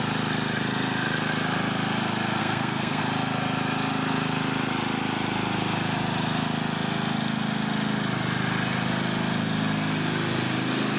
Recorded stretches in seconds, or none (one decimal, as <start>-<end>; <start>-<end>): 0.0-2.4; 3.0-11.0